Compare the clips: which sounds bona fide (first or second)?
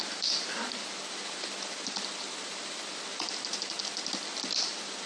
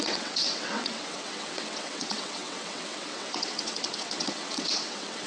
first